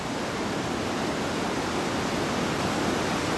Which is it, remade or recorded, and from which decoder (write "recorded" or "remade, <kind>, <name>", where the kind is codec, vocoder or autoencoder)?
recorded